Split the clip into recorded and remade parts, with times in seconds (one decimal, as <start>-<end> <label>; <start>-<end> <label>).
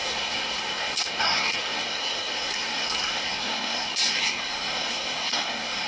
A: 0.0-5.9 remade